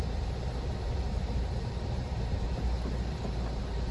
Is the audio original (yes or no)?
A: no